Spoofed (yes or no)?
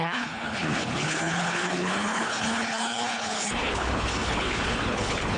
yes